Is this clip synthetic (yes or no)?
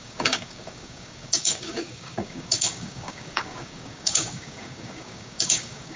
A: yes